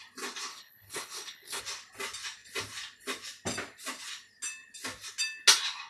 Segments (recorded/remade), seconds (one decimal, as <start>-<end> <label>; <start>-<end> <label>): 0.0-0.5 recorded; 0.5-1.6 remade; 1.6-5.9 recorded